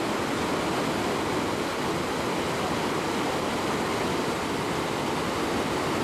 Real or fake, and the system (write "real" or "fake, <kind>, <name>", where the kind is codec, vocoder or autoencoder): real